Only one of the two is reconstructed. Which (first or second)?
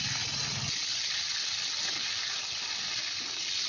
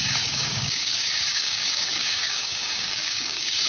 second